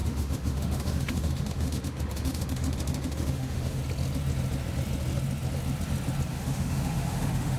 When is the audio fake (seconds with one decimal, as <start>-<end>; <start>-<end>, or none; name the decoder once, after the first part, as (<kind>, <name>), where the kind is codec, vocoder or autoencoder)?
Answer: 0.0-3.8 (autoencoder, DAC-VAE); 6.3-7.6